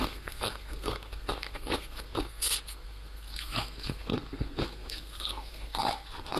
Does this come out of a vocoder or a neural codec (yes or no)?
yes